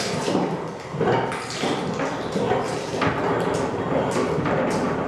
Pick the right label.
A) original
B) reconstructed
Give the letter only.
A